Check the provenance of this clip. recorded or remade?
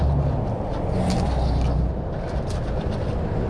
recorded